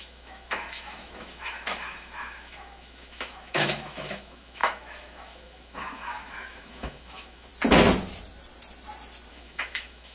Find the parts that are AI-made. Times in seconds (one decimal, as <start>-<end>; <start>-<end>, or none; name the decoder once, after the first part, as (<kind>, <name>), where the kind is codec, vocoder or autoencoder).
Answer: 0.0-7.5 (autoencoder, DAC-VAE); 9.3-10.1